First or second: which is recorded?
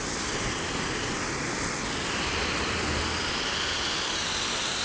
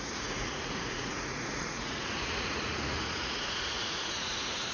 first